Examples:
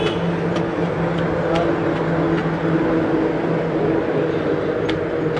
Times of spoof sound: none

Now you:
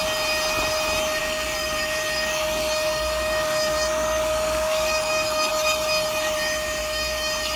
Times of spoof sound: 1.2-5.5 (codec, DAC); 6.8-7.6

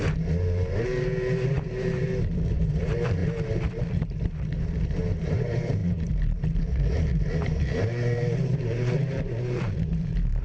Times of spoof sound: 0.0-3.2 (vocoder, BigVGAN v2); 3.9-10.4